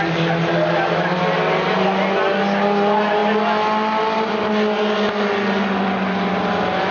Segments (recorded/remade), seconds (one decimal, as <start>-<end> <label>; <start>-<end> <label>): 0.0-6.9 recorded